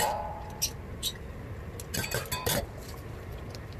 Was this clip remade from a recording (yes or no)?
no